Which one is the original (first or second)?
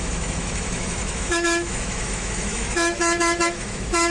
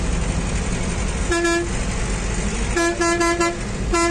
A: second